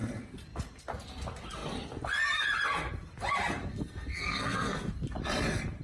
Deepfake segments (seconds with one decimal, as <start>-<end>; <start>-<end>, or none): 3.7-4.9